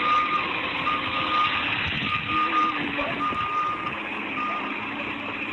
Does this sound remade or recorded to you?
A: recorded